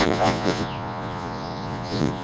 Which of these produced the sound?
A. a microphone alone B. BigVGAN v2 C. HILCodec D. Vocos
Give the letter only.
D